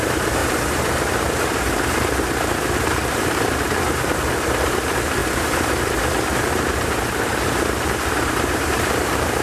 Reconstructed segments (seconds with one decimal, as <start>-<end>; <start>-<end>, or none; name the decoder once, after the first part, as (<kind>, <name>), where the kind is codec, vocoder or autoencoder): 0.0-0.4 (vocoder, BigVGAN v2); 1.5-9.4

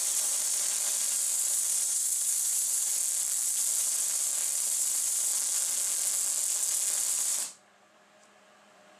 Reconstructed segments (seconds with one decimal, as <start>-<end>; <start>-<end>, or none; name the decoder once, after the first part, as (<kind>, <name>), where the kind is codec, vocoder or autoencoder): 0.0-2.9 (vocoder, BigVGAN v2); 3.8-5.3; 7.0-9.0

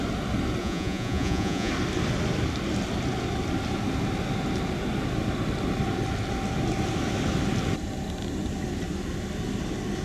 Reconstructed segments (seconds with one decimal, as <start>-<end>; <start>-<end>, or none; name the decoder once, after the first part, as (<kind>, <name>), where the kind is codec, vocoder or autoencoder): 0.6-1.7 (vocoder, Vocos)

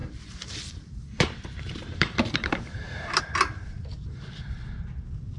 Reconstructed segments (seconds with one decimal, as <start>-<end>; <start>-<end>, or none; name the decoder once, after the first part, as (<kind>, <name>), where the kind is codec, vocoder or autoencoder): 0.0-3.2 (vocoder, BigVGAN v2)

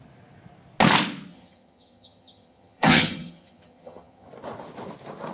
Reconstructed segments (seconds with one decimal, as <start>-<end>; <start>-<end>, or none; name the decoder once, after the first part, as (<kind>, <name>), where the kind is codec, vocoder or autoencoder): 1.3-4.3 (vocoder, HiFi-GAN)

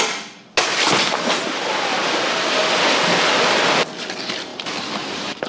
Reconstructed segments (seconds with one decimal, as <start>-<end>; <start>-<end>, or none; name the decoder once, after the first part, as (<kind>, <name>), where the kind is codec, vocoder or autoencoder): 2.6-3.3 (vocoder, BigVGAN v2); 4.5-5.5

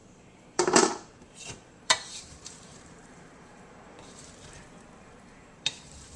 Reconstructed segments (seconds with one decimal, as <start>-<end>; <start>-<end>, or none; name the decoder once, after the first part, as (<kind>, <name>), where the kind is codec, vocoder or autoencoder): 0.0-4.2 (vocoder, BigVGAN v2); 5.0-6.2